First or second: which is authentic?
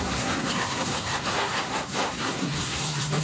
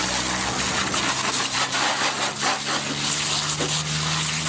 second